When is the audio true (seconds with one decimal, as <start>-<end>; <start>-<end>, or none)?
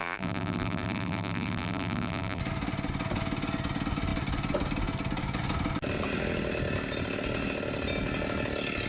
2.4-8.9